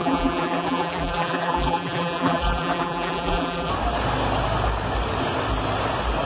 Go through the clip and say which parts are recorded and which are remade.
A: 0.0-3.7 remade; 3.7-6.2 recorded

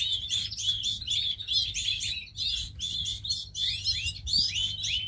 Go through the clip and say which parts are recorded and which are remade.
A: 0.0-5.1 recorded

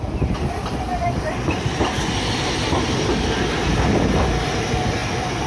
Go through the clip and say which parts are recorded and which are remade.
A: 0.0-5.5 remade